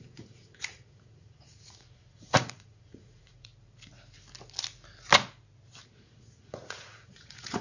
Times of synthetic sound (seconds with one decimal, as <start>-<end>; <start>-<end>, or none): 0.0-3.5; 6.0-7.6